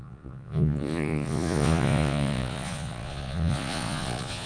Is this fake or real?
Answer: fake